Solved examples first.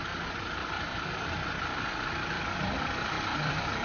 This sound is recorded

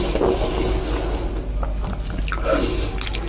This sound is recorded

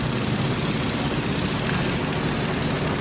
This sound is recorded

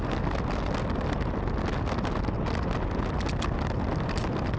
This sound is recorded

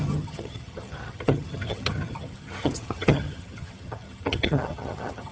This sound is remade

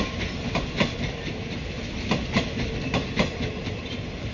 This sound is recorded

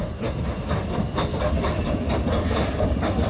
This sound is recorded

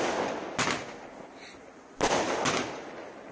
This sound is recorded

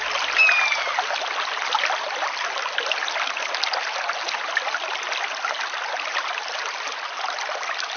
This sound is recorded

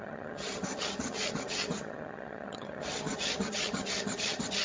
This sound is remade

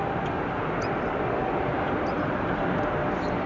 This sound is recorded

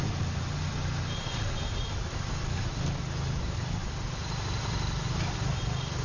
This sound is recorded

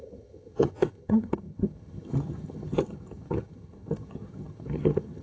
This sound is remade